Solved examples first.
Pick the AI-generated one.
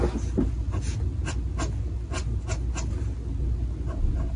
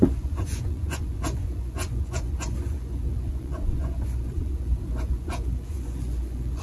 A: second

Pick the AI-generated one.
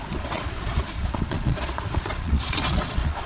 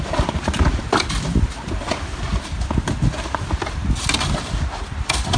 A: first